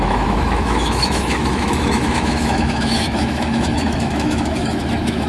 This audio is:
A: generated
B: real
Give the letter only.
A